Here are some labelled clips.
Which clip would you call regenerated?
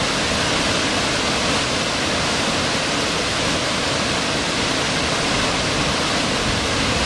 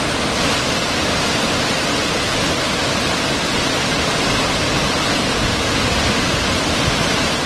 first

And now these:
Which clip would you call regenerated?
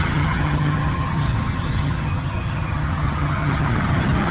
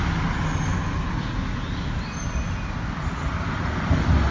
first